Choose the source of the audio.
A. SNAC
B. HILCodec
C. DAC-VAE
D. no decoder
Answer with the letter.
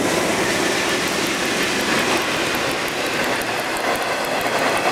D